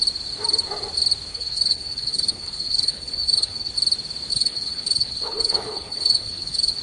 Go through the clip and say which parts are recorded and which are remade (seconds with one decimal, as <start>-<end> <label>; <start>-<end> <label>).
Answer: 0.0-1.3 recorded; 1.3-3.7 remade; 3.7-4.3 recorded; 4.3-6.8 remade